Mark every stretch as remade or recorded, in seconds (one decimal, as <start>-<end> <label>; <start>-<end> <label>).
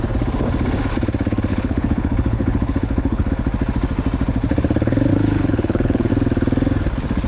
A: 0.0-1.5 recorded; 1.5-3.3 remade; 3.3-5.1 recorded; 5.1-6.1 remade; 6.1-7.3 recorded